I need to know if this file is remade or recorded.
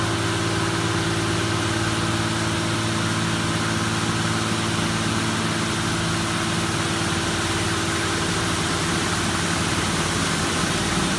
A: recorded